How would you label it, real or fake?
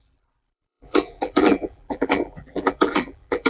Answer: fake